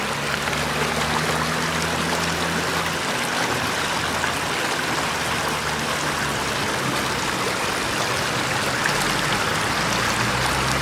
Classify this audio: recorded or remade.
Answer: recorded